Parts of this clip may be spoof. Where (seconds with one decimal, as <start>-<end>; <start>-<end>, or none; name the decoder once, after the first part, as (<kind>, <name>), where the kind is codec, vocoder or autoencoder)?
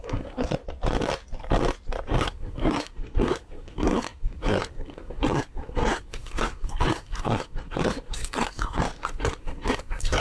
0.0-0.6 (codec, SNAC); 2.2-10.2